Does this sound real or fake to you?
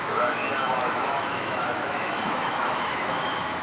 fake